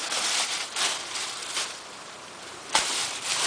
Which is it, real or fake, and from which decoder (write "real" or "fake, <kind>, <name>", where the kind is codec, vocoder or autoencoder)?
fake, vocoder, BigVGAN v2